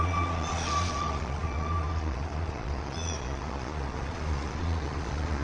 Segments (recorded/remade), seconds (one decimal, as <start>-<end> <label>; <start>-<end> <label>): 0.0-5.4 remade